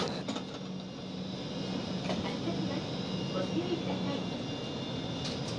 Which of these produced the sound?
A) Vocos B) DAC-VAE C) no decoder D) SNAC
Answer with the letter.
C